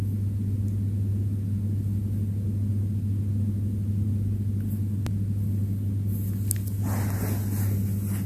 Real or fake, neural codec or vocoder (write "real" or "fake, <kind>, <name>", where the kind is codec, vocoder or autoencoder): real